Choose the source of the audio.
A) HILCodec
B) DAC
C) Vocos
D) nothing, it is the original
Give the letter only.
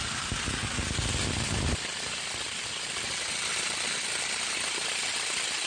D